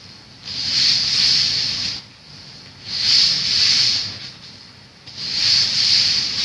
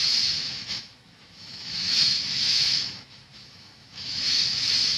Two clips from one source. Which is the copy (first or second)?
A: second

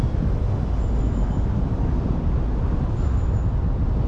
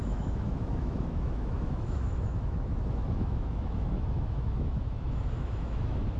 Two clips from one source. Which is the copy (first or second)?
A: second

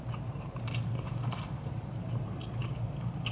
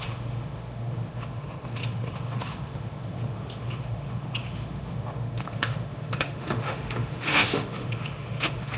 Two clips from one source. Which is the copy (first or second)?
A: second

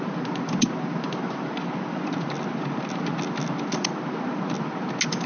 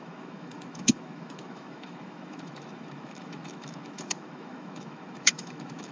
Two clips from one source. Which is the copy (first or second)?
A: second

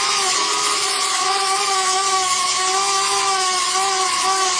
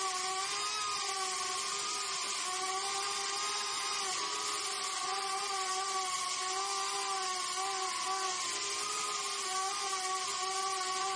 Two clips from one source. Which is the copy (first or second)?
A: first